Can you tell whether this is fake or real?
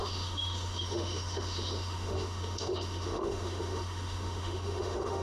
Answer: fake